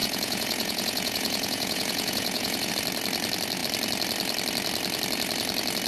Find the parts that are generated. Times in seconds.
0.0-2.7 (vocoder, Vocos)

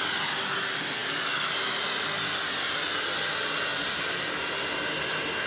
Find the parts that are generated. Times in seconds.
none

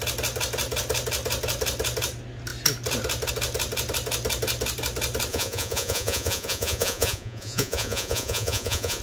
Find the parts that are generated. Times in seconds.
5.3-9.0 (vocoder, Vocos)

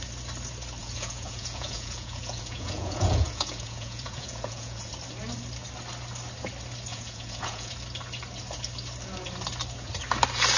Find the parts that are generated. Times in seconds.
0.8-4.9 (vocoder, Vocos); 6.9-7.7

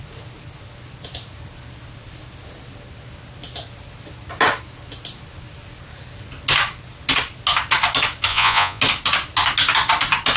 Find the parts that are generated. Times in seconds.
8.3-8.8 (vocoder, Vocos)

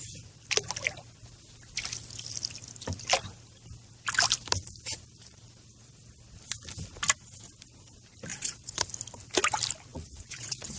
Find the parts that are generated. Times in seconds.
8.3-8.9 (vocoder, Vocos); 9.9-10.8

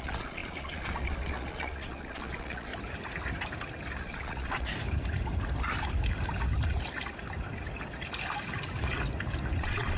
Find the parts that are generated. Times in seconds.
0.0-2.7 (vocoder, Vocos); 4.0-4.7; 9.6-10.0

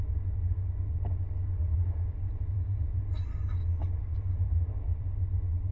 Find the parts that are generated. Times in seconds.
1.6-3.0 (vocoder, Vocos)